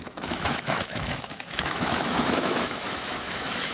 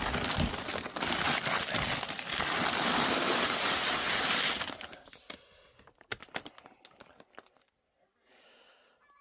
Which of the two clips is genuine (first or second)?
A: second